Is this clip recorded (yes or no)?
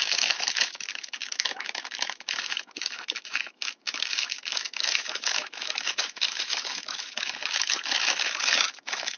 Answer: no